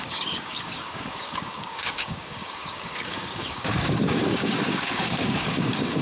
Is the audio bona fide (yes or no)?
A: no